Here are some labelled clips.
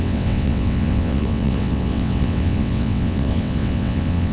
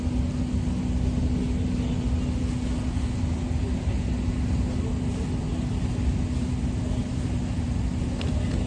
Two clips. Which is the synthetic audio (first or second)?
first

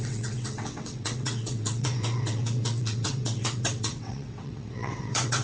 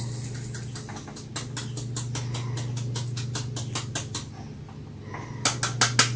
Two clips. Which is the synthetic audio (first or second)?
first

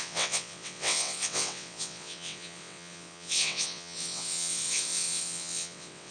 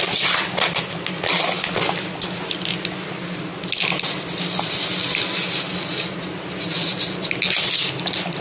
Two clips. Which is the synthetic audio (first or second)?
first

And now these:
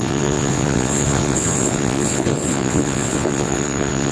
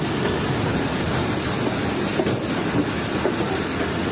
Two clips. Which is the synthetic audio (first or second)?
first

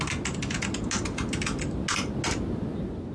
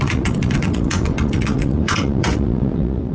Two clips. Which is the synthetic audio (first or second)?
second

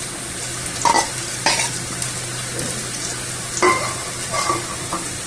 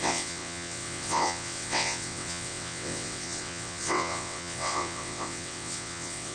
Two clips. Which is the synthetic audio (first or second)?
second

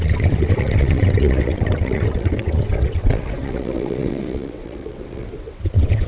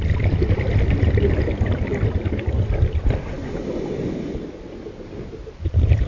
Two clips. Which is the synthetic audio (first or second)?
first